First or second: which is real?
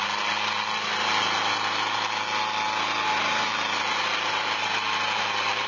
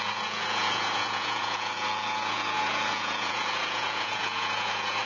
first